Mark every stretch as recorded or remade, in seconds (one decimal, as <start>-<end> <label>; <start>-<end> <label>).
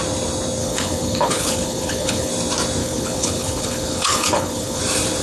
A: 0.0-0.6 recorded; 0.6-2.3 remade; 2.3-2.8 recorded; 2.8-4.8 remade; 4.8-5.2 recorded